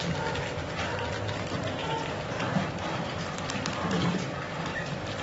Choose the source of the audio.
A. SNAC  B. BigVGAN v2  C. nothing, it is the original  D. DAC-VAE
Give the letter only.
C